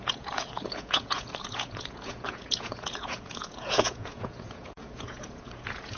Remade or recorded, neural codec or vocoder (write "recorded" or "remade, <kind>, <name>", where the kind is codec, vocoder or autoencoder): remade, vocoder, Vocos